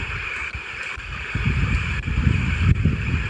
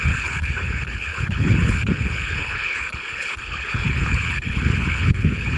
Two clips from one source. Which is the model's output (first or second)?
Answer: second